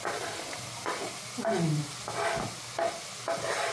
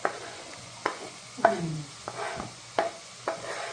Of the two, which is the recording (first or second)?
first